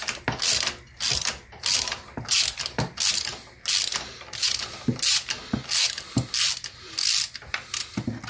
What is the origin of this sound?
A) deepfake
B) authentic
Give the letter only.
B